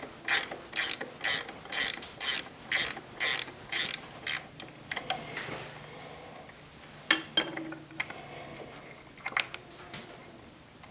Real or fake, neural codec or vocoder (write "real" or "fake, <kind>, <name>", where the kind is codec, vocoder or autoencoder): real